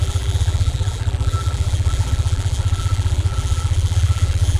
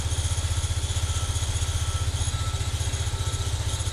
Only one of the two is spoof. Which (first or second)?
first